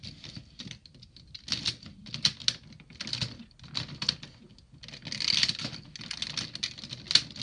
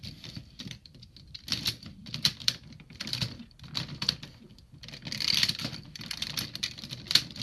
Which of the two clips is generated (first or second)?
second